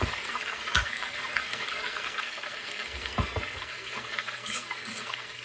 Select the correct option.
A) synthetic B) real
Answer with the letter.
A